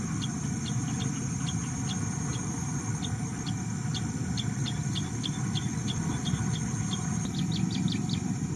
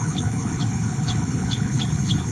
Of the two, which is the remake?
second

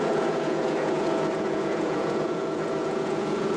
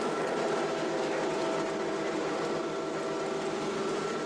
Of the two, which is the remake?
first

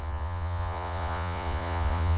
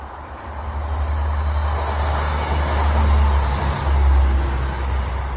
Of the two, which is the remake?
first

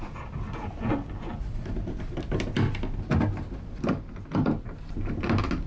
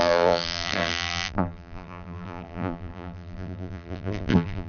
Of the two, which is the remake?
second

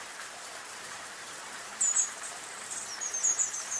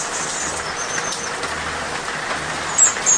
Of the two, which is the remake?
first